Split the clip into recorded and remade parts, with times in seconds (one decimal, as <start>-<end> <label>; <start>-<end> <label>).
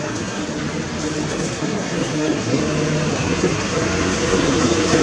0.0-0.4 remade; 0.4-1.3 recorded; 1.3-2.6 remade; 2.6-3.1 recorded; 3.1-5.0 remade